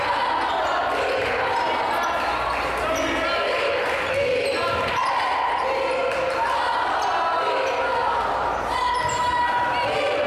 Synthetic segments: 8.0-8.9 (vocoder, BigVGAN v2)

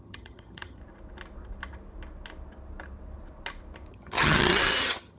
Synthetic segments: 0.0-0.8 (vocoder, HiFi-GAN); 3.9-5.2

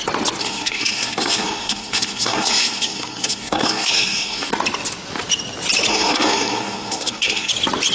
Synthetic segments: 0.4-4.5 (codec, SNAC); 5.9-7.5